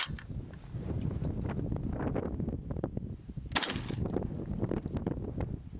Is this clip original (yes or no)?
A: yes